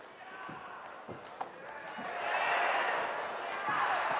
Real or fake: real